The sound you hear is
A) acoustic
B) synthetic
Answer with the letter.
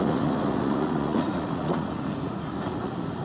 B